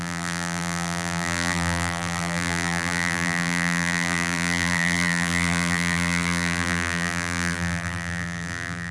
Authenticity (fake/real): fake